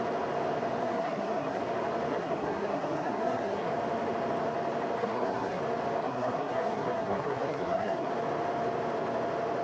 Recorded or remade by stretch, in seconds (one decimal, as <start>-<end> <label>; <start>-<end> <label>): 0.0-0.8 recorded; 0.8-1.6 remade; 1.6-2.1 recorded; 2.1-3.7 remade; 3.7-5.0 recorded; 5.0-5.6 remade; 5.6-6.0 recorded; 6.0-8.1 remade; 8.1-9.6 recorded